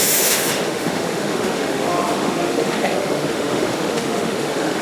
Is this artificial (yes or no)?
yes